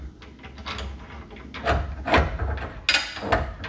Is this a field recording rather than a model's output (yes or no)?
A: yes